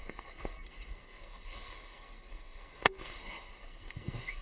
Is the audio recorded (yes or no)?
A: no